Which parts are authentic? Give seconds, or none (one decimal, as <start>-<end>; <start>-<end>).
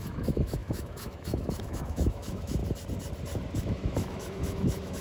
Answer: 2.6-3.6